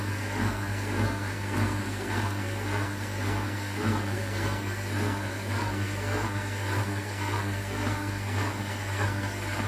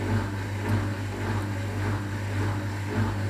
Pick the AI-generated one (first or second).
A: first